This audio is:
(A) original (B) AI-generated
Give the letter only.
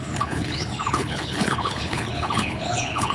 B